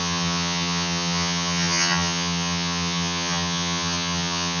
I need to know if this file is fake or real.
fake